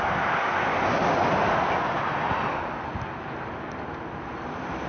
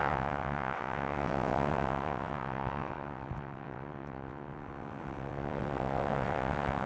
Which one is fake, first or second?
second